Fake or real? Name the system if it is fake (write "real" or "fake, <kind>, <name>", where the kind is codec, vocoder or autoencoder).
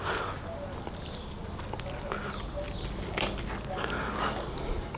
real